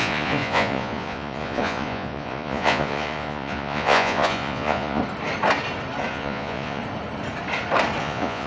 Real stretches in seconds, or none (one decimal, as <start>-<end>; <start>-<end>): 5.0-6.1; 6.8-8.0

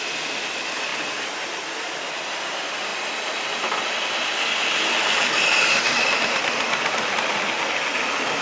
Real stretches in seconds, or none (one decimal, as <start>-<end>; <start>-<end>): none